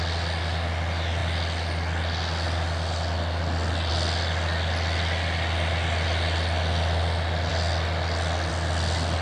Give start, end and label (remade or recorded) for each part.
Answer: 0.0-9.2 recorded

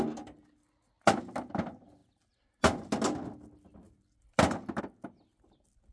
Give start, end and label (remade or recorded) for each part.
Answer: 0.0-5.9 recorded